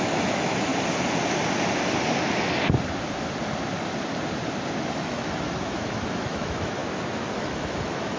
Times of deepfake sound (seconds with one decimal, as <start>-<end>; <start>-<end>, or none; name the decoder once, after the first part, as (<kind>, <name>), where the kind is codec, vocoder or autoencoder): 0.0-0.7 (autoencoder, DAC-VAE); 4.9-6.8; 7.4-8.2